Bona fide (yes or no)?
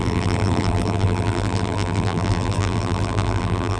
no